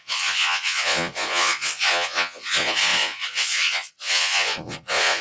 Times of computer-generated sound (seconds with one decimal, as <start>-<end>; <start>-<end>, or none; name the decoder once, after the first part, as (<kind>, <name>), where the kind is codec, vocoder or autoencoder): 0.0-5.2 (vocoder, Vocos)